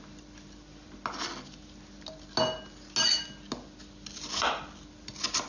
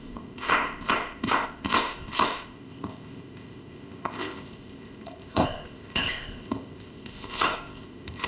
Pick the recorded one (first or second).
first